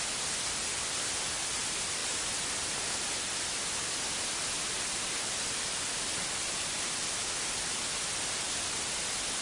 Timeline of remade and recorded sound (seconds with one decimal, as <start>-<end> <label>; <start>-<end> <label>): 0.0-9.4 recorded